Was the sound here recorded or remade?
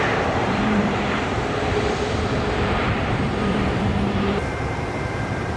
remade